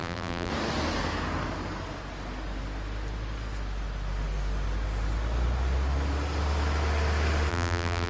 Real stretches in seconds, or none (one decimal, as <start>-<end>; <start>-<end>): 0.5-7.5